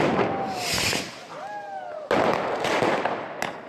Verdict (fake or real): real